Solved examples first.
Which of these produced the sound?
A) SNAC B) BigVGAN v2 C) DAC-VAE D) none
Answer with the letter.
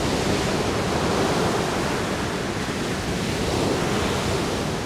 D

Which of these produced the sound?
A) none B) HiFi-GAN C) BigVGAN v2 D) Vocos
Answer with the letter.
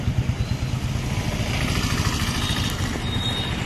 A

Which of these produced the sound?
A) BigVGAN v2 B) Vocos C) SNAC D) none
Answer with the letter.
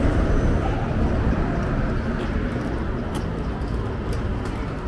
D